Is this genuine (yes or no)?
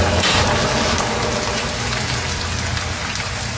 yes